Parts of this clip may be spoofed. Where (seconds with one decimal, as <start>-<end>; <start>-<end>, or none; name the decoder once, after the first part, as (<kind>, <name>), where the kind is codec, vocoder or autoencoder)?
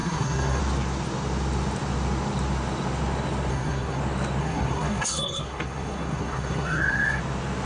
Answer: 0.0-0.6 (codec, SNAC); 3.5-4.0; 4.4-7.2